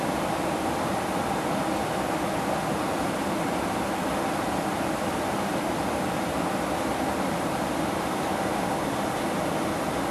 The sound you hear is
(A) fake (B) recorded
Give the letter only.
B